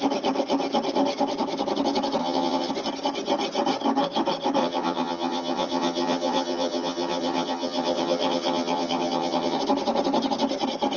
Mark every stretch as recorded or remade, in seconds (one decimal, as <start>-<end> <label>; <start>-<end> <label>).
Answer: 0.0-2.2 recorded; 2.2-2.7 remade; 2.7-4.6 recorded; 4.6-9.6 remade; 9.6-11.0 recorded